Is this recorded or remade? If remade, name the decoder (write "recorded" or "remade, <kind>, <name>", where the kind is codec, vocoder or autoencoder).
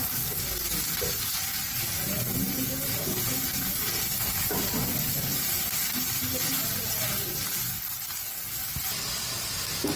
recorded